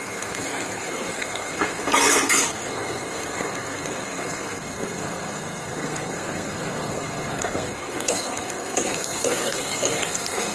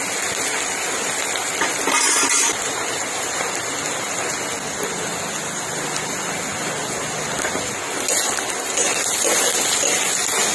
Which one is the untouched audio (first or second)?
second